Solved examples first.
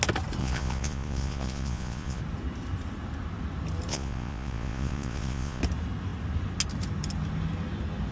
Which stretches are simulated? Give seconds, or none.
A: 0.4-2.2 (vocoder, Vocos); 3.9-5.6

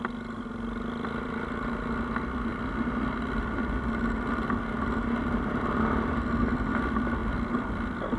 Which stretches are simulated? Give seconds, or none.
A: none

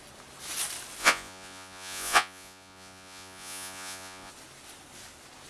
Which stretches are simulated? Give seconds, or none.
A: 1.0-4.3 (vocoder, Vocos)

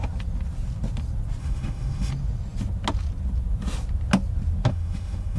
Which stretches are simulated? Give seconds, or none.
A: 1.4-2.1 (autoencoder, DAC-VAE); 4.7-5.4

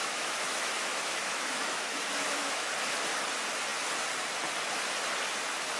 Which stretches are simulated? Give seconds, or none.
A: 0.0-2.7 (autoencoder, DAC-VAE)

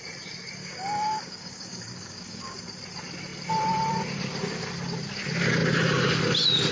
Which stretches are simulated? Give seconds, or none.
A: 0.6-2.6 (codec, DAC)

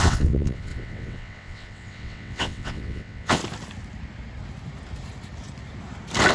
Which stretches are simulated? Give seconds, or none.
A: 0.0-3.4 (vocoder, WaveNeXt)

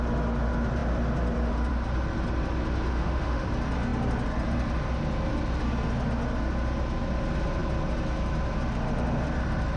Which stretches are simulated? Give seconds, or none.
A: 2.9-3.5 (autoencoder, DAC-VAE)